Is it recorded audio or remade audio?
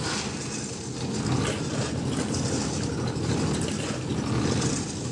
recorded